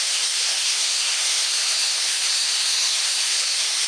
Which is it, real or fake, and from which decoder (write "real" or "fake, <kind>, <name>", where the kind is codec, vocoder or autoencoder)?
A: fake, codec, SNAC